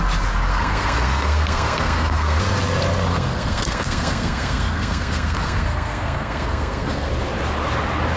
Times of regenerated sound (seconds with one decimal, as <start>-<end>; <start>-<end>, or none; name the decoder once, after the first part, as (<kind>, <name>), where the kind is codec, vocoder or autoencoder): 0.5-2.4 (codec, SNAC); 3.1-7.1